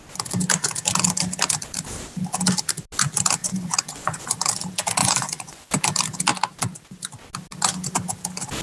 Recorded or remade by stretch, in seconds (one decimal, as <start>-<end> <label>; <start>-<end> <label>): 0.0-3.4 recorded; 3.4-4.4 remade; 4.4-5.0 recorded; 5.0-5.7 remade; 5.7-8.6 recorded

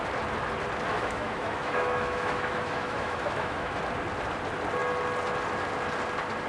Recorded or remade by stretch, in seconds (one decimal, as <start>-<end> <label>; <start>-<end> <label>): 0.0-0.9 recorded; 0.9-3.8 remade; 3.8-6.5 recorded